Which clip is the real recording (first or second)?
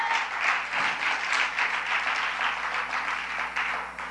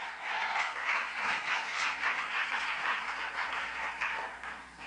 first